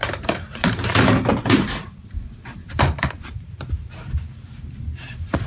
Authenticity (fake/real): fake